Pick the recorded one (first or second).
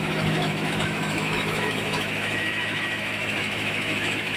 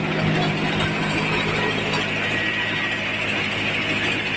second